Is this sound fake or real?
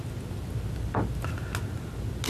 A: real